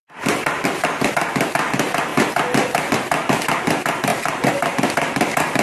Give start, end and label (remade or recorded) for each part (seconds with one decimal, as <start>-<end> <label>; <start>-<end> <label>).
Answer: 0.0-2.1 remade; 2.1-2.8 recorded; 2.8-5.6 remade